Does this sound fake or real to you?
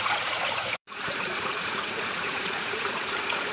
fake